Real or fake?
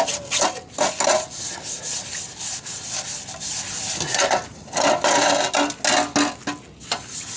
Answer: real